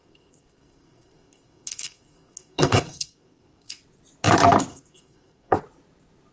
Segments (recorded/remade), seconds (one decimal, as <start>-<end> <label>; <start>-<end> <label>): 0.0-3.8 remade; 3.8-4.7 recorded; 4.7-5.6 remade; 5.6-6.3 recorded